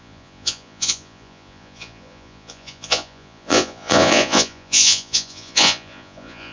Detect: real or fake fake